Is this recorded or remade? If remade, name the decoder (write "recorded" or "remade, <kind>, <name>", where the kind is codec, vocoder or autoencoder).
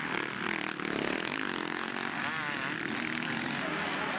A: recorded